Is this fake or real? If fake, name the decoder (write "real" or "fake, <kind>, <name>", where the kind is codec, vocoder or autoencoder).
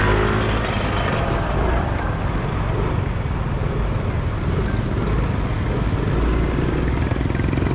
real